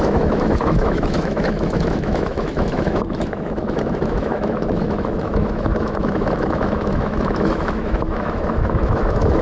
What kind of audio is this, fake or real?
fake